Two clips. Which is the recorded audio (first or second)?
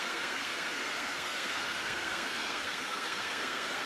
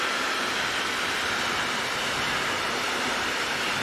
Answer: second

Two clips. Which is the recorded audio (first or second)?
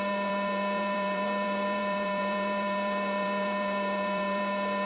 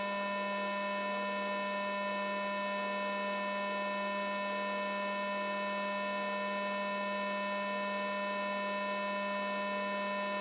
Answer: second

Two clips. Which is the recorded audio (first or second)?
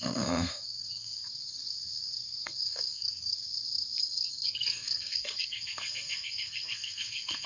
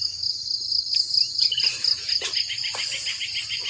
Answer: second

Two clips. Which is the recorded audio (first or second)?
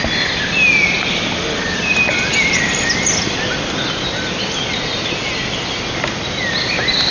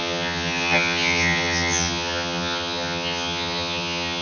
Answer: first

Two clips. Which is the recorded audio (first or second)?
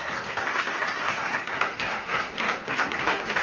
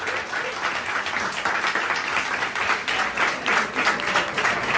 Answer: second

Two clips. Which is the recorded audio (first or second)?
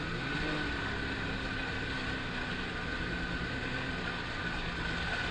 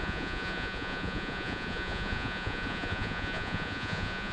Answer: first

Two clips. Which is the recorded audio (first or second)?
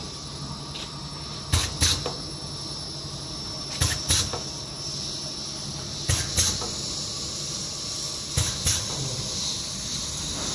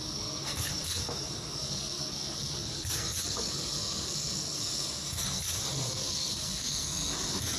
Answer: first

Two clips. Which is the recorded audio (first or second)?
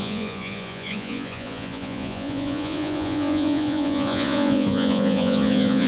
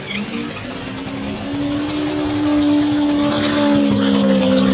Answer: second